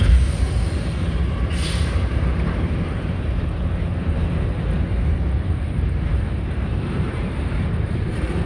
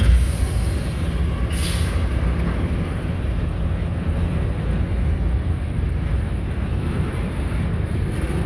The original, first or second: second